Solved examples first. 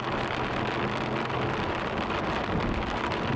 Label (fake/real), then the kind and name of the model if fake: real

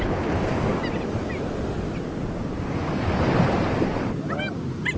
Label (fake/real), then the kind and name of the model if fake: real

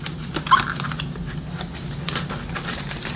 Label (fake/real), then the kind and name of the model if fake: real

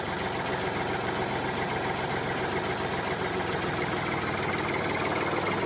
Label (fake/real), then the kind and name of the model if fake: real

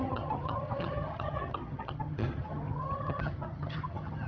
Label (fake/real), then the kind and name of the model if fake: fake, vocoder, HiFi-GAN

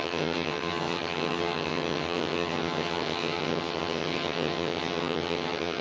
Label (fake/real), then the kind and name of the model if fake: fake, vocoder, HiFi-GAN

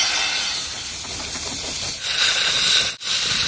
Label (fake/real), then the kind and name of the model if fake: real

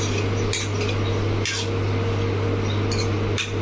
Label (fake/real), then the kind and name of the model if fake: real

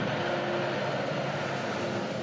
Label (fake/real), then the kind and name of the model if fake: real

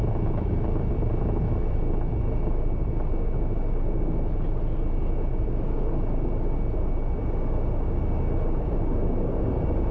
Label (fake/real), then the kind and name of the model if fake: real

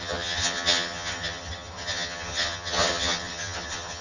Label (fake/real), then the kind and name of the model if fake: fake, vocoder, HiFi-GAN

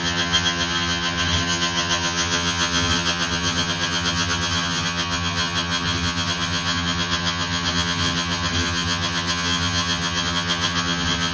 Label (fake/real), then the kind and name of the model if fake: fake, vocoder, HiFi-GAN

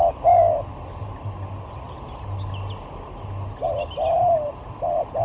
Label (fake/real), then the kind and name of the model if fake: real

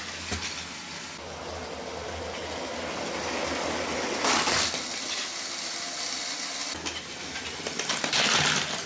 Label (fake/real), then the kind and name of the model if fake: real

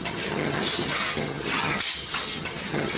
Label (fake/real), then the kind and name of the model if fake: fake, vocoder, HiFi-GAN